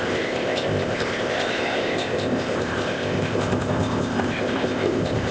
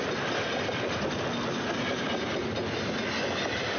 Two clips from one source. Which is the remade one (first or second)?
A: first